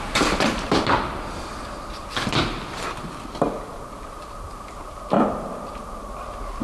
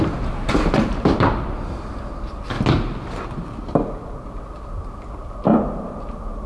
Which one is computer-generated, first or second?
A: first